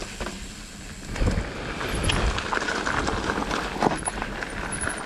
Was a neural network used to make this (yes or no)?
no